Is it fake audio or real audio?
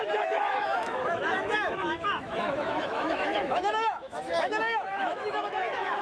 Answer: fake